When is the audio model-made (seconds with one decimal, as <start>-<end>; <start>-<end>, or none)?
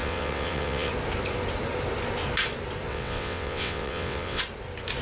0.0-0.9; 2.9-4.4